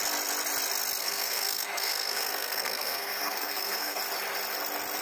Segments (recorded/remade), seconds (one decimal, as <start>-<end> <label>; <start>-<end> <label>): 0.0-1.0 recorded; 1.0-4.0 remade; 4.0-5.0 recorded